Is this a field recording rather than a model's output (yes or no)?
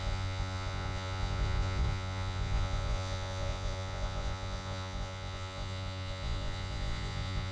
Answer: no